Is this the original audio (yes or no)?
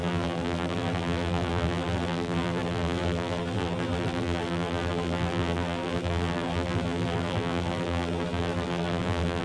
no